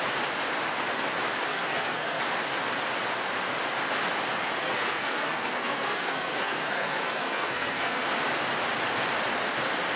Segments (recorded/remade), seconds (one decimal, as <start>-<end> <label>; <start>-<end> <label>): 0.0-1.5 recorded; 1.5-2.2 remade; 2.2-4.6 recorded; 4.6-8.1 remade; 8.1-10.0 recorded